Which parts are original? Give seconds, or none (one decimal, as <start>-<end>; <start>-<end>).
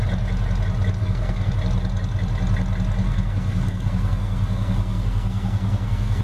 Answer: 0.0-1.0; 1.5-3.0